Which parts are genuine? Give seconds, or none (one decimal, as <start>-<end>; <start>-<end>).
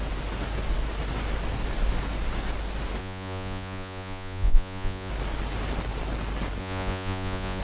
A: 0.0-3.0; 5.1-6.6